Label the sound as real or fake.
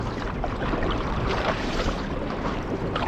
fake